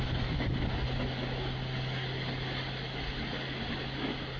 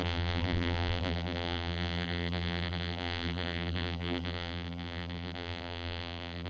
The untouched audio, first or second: first